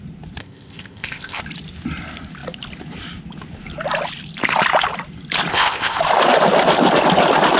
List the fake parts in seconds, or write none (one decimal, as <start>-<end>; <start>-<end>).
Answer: 0.4-1.4; 5.5-6.0